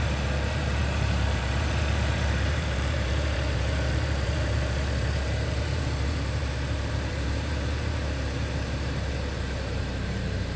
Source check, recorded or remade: remade